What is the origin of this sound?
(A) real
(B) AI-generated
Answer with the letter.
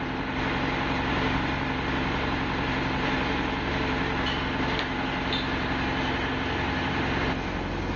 A